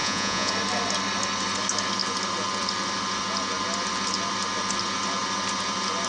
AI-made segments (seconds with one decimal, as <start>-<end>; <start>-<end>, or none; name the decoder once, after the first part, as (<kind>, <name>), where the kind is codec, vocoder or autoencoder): 0.0-0.5 (vocoder, Vocos)